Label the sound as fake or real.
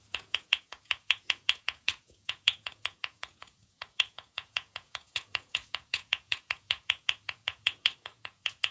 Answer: fake